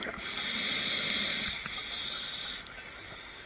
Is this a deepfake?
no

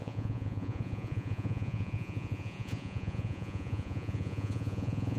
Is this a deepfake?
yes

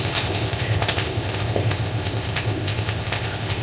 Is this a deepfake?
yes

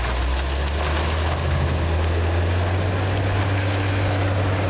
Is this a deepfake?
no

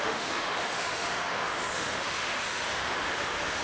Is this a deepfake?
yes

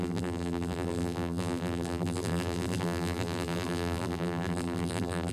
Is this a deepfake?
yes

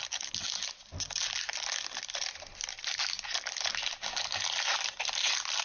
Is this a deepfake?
no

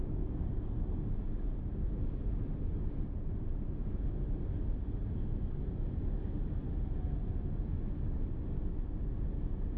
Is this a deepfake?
no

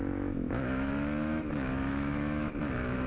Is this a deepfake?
yes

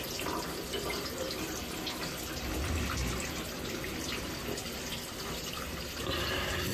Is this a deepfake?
no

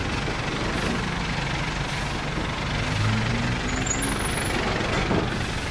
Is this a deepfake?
no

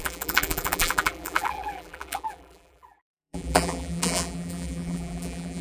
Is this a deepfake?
yes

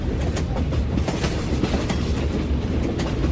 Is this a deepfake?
no